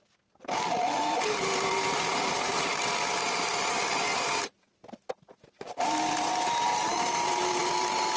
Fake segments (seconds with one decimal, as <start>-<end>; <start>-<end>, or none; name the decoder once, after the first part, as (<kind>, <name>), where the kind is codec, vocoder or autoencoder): none